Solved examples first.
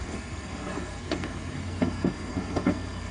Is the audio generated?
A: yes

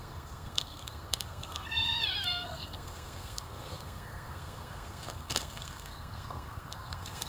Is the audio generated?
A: yes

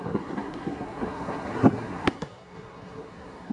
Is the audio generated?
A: yes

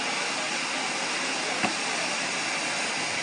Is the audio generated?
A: no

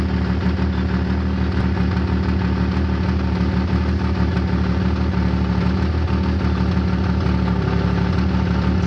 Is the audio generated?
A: no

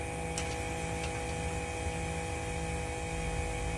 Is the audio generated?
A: no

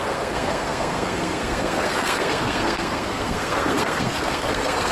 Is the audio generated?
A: yes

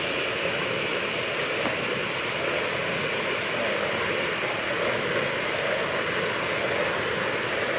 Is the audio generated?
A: no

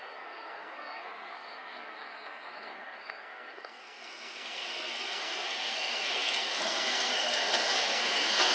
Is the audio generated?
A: yes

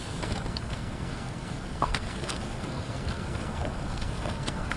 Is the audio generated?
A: yes